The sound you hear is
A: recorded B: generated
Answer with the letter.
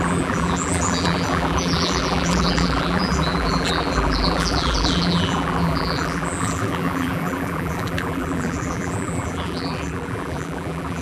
B